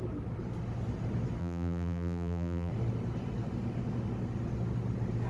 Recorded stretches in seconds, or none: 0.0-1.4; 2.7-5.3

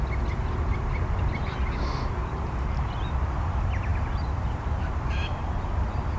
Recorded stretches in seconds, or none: 0.0-6.2

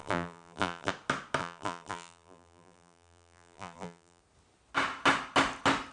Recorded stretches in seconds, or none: 0.9-1.4; 4.2-5.9

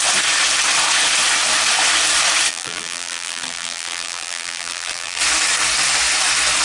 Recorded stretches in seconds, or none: 0.0-2.5; 5.2-6.6

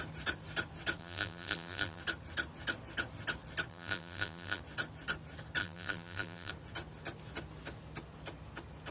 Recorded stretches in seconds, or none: 0.0-1.0; 2.0-3.7; 4.6-5.6; 6.5-8.9

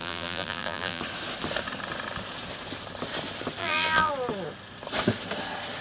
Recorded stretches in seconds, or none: 1.0-3.6; 4.1-5.8

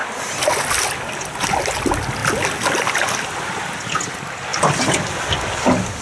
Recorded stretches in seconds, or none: 0.5-2.2; 3.7-4.5; 5.3-6.0